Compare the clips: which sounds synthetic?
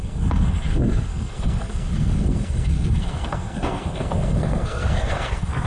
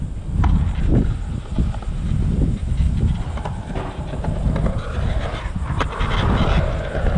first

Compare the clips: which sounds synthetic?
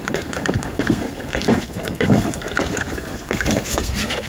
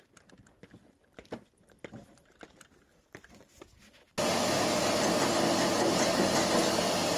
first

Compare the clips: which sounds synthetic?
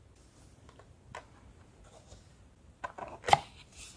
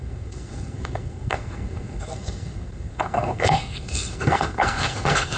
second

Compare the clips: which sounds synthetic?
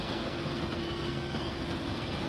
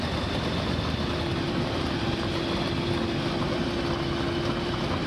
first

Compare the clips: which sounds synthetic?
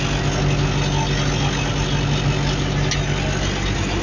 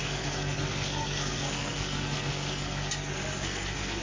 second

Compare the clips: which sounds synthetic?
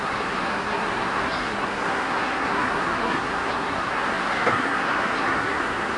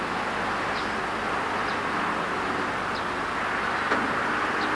first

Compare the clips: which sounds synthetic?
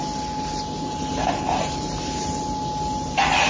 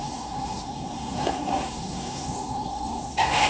second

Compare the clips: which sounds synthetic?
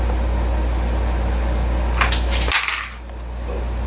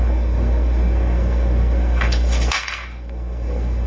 second